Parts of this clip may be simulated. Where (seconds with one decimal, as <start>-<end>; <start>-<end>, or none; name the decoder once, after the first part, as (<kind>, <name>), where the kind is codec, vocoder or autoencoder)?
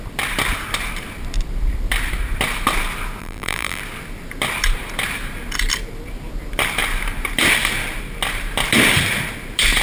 3.2-3.8 (vocoder, BigVGAN v2)